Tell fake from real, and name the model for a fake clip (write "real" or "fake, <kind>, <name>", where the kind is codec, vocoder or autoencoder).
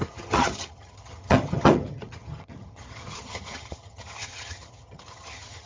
fake, vocoder, HiFi-GAN